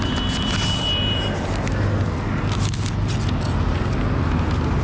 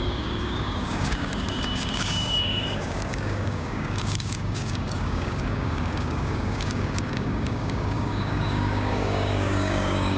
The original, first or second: first